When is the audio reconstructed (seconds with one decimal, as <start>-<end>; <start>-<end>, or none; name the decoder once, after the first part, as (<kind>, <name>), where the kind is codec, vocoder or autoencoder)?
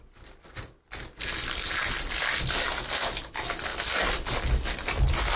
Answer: none